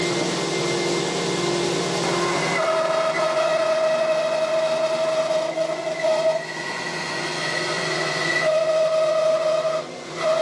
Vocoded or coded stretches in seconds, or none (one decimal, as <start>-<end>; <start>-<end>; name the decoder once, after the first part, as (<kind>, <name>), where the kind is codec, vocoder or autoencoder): 3.2-4.5 (vocoder, Vocos); 5.3-10.4